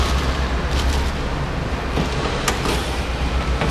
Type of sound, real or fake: real